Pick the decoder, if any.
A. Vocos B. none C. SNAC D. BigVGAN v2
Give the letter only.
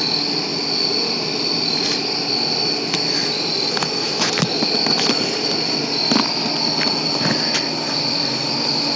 B